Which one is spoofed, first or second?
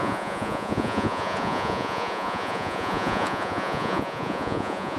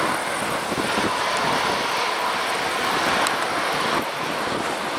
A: first